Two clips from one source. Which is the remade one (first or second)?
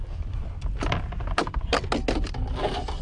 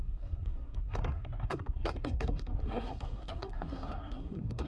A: second